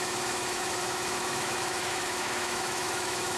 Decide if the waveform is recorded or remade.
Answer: remade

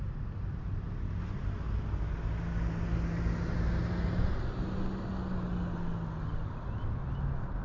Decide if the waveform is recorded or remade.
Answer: recorded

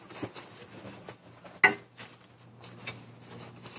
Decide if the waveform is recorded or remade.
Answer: recorded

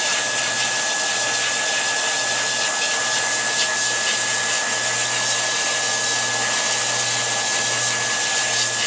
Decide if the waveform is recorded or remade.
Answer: recorded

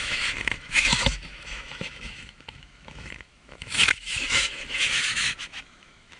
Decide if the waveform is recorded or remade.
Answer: remade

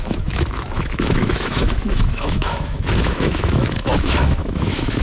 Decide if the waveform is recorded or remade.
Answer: remade